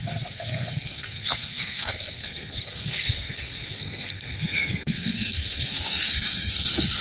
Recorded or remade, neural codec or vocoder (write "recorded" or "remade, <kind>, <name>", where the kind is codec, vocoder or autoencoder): remade, codec, SNAC